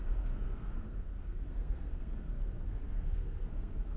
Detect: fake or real fake